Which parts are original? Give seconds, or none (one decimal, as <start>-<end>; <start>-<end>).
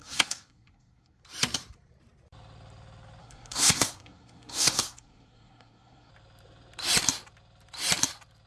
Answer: 1.2-3.2; 6.1-8.5